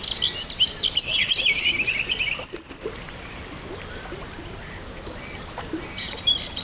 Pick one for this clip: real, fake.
real